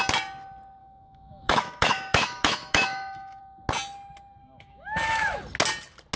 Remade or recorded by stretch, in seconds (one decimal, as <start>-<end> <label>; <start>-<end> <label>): 0.0-0.8 recorded; 0.8-3.4 remade; 3.4-4.4 recorded; 4.4-5.4 remade; 5.4-6.2 recorded